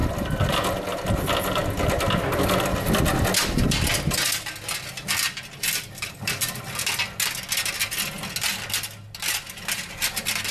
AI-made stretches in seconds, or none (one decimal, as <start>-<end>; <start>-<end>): none